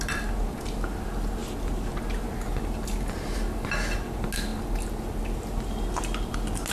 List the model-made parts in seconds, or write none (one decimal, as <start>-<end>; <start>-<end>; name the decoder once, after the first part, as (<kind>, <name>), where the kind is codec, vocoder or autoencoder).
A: none